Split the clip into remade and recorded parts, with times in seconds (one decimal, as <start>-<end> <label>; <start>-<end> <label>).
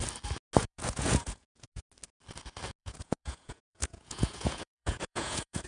0.0-0.6 recorded; 0.6-1.8 remade; 1.8-2.8 recorded; 2.8-5.7 remade